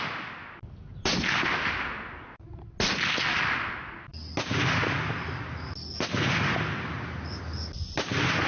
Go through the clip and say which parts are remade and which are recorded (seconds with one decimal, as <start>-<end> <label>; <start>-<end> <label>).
0.0-8.5 recorded